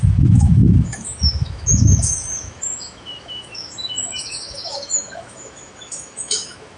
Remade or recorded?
remade